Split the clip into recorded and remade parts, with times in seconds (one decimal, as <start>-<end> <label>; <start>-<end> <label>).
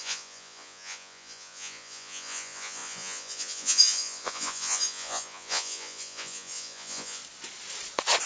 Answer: 0.0-7.2 remade; 7.2-8.3 recorded